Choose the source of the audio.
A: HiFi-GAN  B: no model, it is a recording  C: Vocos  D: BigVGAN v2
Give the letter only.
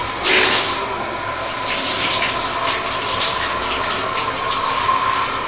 B